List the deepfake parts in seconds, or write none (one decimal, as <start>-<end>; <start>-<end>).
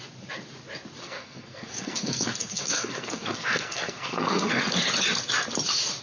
1.0-4.6